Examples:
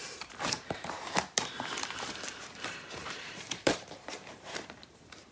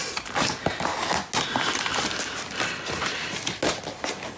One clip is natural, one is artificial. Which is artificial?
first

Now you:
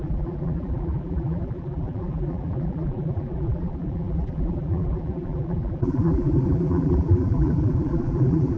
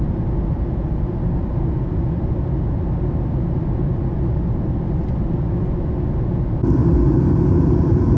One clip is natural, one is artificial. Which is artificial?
first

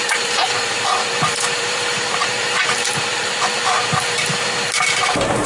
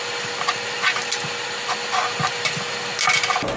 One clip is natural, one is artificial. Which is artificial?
first